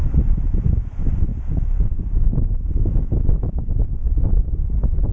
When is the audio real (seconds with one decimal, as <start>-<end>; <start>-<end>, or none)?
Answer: 0.0-1.3; 2.7-4.0